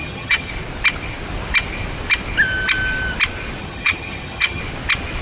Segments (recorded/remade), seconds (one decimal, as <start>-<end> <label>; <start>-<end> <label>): 0.0-0.5 remade; 0.5-3.6 recorded; 3.6-4.6 remade; 4.6-5.2 recorded